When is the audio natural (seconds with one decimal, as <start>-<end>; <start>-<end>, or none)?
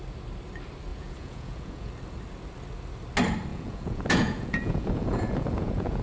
0.0-0.9; 1.9-3.5